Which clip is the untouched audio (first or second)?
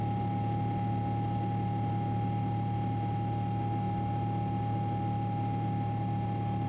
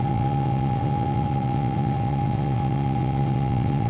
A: first